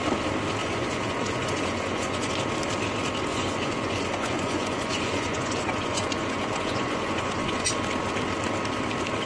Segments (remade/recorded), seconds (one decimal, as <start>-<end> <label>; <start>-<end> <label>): 0.0-0.6 recorded; 0.6-2.3 remade; 2.3-3.3 recorded; 3.3-7.7 remade; 7.7-9.3 recorded